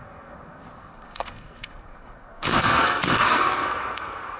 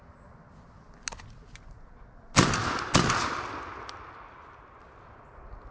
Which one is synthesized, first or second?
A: first